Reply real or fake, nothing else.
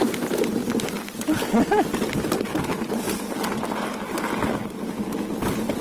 real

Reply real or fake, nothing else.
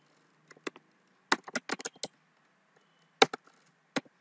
real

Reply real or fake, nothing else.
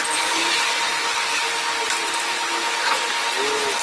real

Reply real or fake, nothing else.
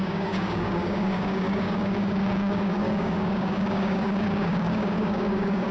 fake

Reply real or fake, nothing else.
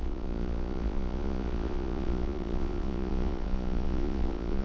fake